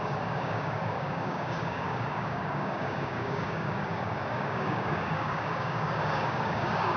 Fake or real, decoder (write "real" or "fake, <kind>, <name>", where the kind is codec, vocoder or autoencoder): fake, codec, DAC